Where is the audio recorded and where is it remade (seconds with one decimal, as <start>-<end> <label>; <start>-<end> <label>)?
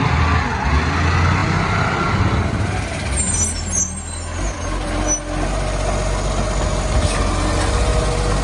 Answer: 0.0-1.4 recorded; 1.4-3.8 remade; 3.8-8.4 recorded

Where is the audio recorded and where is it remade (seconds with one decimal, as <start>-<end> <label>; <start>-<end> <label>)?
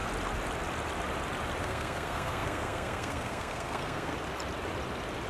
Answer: 0.0-1.6 recorded; 1.6-4.1 remade; 4.1-5.3 recorded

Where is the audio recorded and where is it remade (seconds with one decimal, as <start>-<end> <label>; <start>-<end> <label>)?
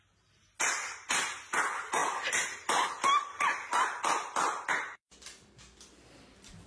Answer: 0.0-6.7 recorded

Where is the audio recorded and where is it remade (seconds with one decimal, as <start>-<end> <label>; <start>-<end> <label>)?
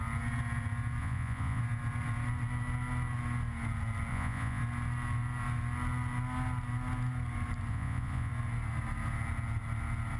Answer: 0.0-1.0 recorded; 1.0-1.6 remade; 1.6-4.1 recorded; 4.1-4.6 remade; 4.6-7.7 recorded; 7.7-8.3 remade; 8.3-10.2 recorded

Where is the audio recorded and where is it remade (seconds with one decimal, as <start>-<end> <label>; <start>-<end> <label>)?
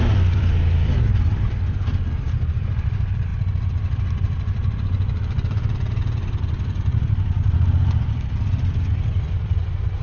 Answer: 0.0-3.3 remade; 3.3-4.1 recorded; 4.1-10.0 remade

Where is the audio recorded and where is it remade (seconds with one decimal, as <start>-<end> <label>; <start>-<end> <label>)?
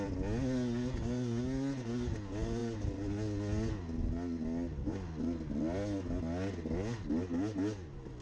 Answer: 0.0-8.2 recorded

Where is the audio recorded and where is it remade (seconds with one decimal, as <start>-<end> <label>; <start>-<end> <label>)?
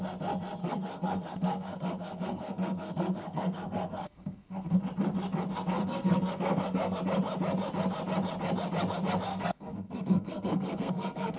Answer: 0.0-0.6 recorded; 0.6-4.8 remade; 4.8-5.8 recorded; 5.8-7.0 remade; 7.0-9.3 recorded; 9.3-11.4 remade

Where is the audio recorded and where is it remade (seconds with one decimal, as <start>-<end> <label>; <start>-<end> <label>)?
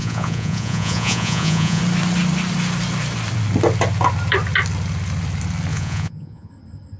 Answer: 0.0-1.8 remade; 1.8-5.7 recorded; 5.7-6.5 remade; 6.5-7.0 recorded